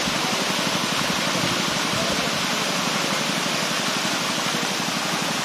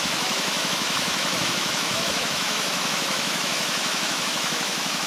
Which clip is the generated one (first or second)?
second